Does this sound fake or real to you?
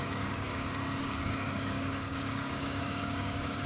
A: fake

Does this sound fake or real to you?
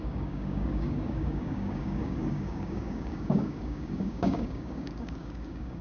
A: fake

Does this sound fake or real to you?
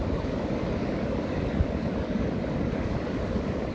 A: fake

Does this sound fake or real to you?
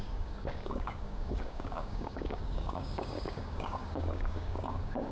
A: fake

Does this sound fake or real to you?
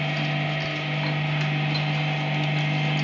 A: real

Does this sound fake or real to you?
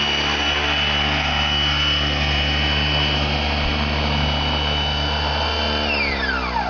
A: real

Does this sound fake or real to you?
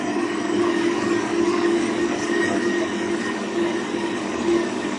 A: fake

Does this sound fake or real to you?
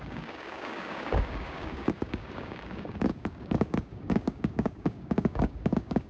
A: fake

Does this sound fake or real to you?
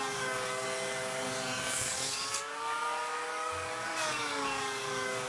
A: fake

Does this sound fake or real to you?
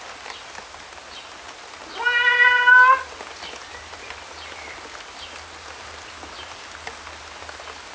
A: real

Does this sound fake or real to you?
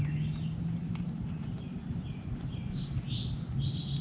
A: real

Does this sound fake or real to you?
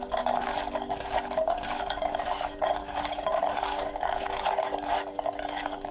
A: fake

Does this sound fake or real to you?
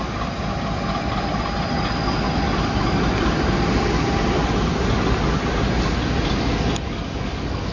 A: real